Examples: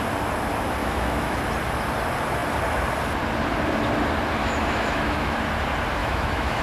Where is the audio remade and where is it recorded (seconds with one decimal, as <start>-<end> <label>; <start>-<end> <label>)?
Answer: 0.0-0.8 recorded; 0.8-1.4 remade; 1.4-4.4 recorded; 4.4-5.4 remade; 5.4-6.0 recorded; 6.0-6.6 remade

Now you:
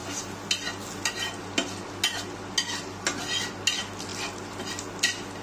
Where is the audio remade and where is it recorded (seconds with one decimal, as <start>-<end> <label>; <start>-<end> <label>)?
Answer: 0.0-5.4 recorded

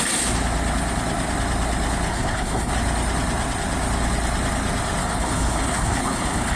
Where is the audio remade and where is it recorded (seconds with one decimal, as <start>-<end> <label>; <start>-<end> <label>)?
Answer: 0.0-2.1 recorded; 2.1-2.7 remade; 2.7-5.0 recorded; 5.0-6.6 remade

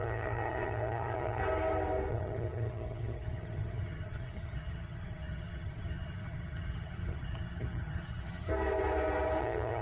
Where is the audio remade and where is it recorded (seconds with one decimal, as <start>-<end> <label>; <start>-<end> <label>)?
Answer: 0.0-1.4 remade; 1.4-2.1 recorded; 2.1-8.5 remade; 8.5-9.4 recorded; 9.4-9.8 remade

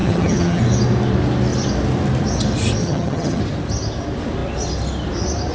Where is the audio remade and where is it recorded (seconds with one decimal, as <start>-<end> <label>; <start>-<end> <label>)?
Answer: 0.0-0.6 remade; 0.6-2.8 recorded; 2.8-3.4 remade; 3.4-5.5 recorded